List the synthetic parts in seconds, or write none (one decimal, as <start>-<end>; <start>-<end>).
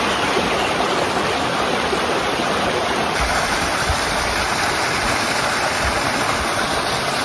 none